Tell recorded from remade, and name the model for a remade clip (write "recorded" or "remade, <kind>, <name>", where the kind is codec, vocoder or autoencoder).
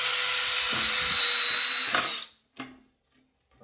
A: recorded